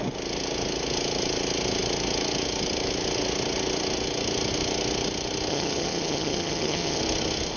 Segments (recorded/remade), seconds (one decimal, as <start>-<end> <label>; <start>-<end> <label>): 0.0-5.5 recorded; 5.5-7.0 remade; 7.0-7.6 recorded